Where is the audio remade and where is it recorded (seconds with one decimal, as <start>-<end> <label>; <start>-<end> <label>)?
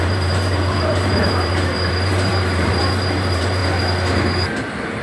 0.0-3.6 remade; 3.6-4.6 recorded; 4.6-5.0 remade